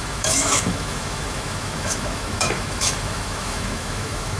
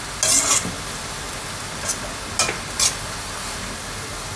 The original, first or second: second